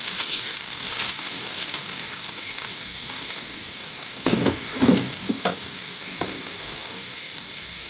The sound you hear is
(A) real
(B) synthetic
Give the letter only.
B